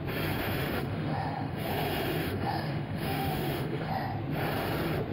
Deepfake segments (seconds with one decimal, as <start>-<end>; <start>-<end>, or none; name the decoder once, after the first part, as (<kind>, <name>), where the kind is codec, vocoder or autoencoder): 0.4-1.7 (autoencoder, DAC-VAE); 2.2-3.9